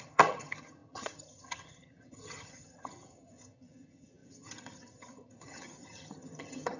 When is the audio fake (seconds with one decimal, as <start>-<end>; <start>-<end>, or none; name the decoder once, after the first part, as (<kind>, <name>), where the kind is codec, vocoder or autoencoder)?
0.0-6.8 (vocoder, HiFi-GAN)